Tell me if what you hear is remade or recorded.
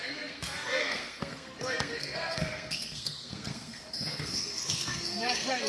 remade